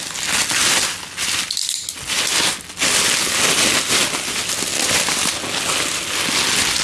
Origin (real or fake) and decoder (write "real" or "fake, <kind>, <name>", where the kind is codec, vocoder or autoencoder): real